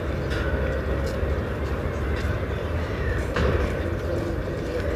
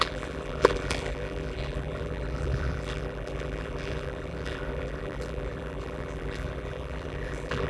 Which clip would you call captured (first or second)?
first